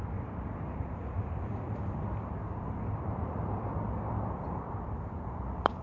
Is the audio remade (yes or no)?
yes